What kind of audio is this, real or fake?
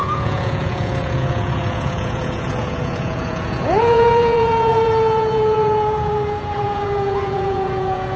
fake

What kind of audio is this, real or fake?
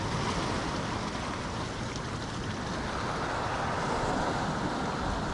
real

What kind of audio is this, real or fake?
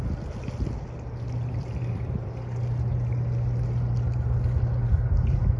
real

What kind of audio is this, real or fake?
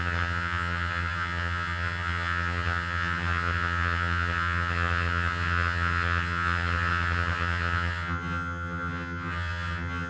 fake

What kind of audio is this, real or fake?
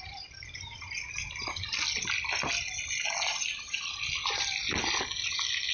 real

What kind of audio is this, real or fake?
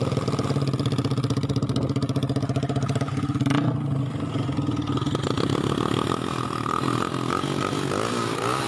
real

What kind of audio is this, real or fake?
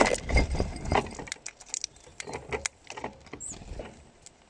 real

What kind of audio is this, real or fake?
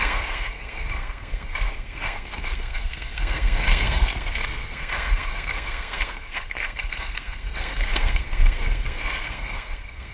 fake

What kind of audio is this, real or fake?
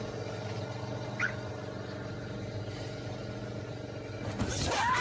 real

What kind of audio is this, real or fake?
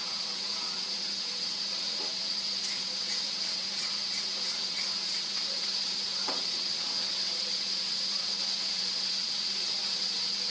fake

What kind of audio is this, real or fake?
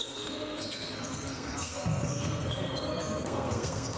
fake